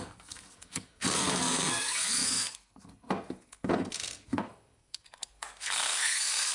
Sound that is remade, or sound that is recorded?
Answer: remade